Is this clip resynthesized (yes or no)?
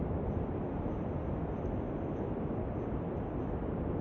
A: no